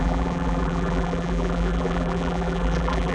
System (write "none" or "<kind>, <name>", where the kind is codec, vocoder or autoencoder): vocoder, BigVGAN v2